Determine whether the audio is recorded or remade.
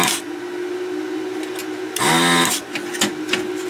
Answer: recorded